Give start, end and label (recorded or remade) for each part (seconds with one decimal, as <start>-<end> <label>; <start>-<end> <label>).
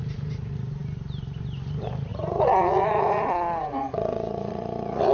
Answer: 0.0-2.1 recorded; 2.1-3.2 remade; 3.2-3.6 recorded; 3.6-5.1 remade